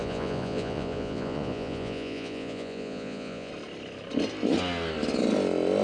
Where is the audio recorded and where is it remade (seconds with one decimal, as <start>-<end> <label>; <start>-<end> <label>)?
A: 0.0-3.5 remade; 3.5-5.8 recorded